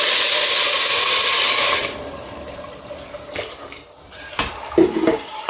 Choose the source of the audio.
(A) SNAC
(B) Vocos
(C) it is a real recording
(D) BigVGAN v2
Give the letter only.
C